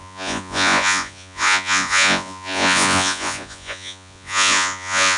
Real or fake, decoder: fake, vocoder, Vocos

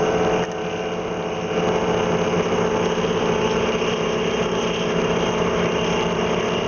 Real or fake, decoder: real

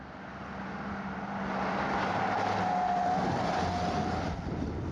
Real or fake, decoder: real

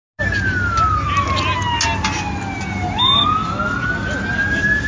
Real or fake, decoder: real